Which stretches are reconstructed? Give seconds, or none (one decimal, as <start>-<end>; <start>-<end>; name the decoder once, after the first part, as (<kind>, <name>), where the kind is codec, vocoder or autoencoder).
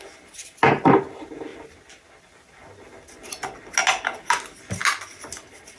none